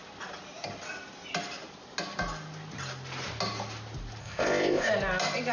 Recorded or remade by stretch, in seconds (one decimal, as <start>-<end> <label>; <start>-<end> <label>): 0.0-4.2 recorded; 4.2-4.9 remade; 4.9-5.5 recorded